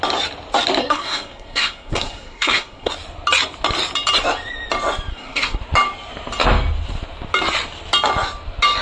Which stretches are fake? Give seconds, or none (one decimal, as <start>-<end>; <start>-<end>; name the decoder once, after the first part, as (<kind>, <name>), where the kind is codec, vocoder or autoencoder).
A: 0.8-2.9 (codec, SNAC); 5.1-5.6